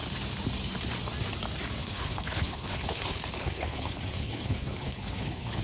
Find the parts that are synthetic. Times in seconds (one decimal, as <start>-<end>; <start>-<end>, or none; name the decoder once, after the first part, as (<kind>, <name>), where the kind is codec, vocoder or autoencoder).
1.8-5.6 (codec, HILCodec)